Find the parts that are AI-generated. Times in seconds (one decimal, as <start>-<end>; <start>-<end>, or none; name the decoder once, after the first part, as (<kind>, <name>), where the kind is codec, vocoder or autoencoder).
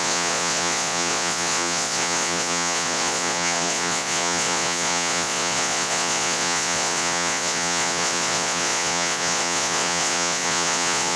0.0-11.2 (vocoder, Vocos)